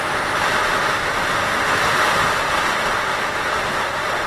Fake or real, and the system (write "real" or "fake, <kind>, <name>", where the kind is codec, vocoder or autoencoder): real